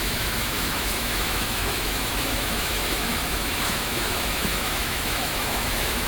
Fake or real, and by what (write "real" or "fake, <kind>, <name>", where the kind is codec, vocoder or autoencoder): fake, autoencoder, DAC-VAE